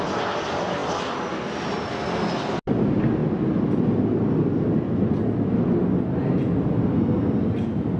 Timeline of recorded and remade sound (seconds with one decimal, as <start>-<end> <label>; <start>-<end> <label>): 0.0-8.0 recorded